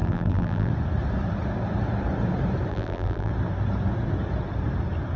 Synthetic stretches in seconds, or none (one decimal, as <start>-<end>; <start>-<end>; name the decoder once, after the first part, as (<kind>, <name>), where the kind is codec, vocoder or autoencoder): 0.0-0.7 (vocoder, BigVGAN v2); 2.7-3.3